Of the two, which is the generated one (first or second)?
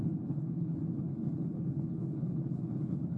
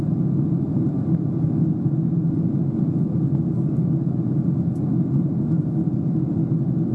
first